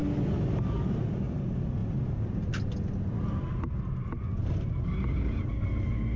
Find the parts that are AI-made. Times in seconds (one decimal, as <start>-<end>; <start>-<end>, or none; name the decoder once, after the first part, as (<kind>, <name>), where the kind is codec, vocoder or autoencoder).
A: none